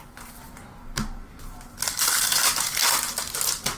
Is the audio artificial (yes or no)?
no